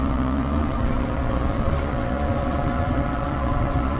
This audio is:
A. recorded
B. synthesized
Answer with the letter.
B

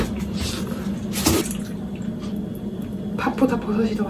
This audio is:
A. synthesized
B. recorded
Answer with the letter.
B